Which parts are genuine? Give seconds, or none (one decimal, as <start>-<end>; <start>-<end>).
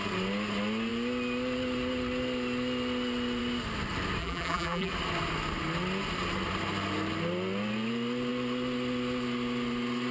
0.0-4.2; 4.9-10.1